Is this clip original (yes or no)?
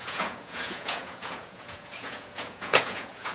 no